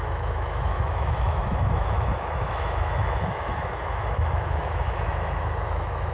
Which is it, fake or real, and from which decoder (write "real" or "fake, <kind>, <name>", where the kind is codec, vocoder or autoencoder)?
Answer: fake, autoencoder, DAC-VAE